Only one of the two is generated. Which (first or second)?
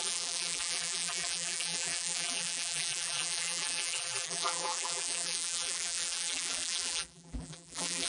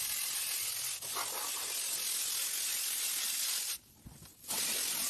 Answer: first